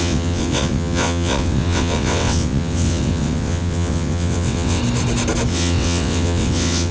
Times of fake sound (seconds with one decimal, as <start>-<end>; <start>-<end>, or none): 0.0-4.8; 5.5-6.9